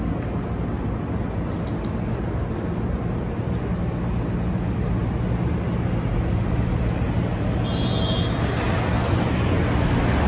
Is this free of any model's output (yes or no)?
yes